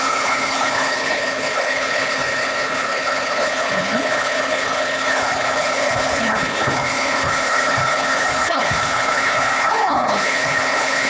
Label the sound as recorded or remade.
remade